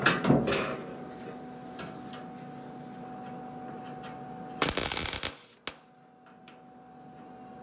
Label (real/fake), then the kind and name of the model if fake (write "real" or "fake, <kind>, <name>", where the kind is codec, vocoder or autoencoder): real